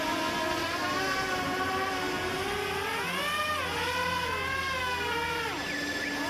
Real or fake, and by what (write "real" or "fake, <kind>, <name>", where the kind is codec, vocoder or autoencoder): real